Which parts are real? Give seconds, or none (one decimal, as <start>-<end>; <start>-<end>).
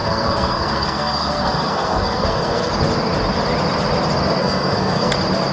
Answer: 2.7-4.4; 5.1-5.5